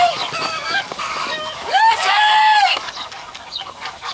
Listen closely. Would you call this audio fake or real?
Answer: fake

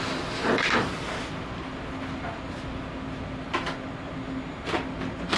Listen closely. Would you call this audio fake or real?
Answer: real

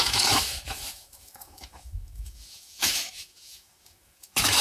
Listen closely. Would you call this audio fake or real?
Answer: fake